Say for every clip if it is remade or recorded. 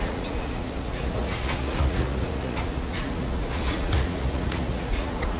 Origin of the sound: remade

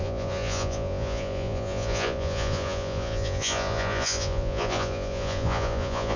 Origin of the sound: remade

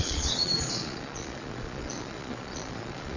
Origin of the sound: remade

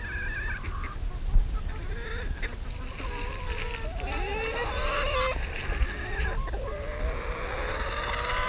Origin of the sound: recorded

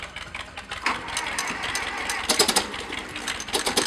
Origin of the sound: recorded